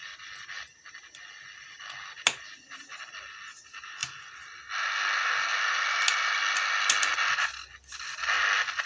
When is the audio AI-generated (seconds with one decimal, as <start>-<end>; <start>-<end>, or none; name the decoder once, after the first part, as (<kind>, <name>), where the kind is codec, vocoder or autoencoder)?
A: none